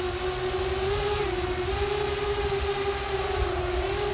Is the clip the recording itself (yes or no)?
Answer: yes